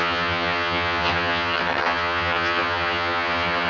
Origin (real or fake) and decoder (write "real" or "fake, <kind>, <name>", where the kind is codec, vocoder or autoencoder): fake, vocoder, HiFi-GAN